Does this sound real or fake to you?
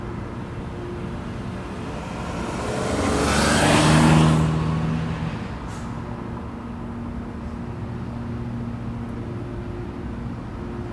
real